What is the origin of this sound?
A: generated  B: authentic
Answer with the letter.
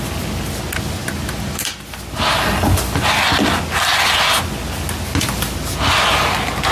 B